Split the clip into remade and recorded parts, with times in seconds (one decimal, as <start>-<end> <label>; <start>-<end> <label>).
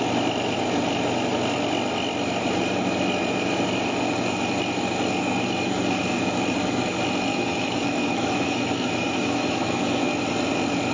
0.0-7.3 recorded; 7.3-10.1 remade; 10.1-10.9 recorded